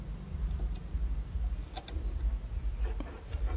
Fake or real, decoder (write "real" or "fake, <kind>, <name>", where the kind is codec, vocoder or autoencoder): real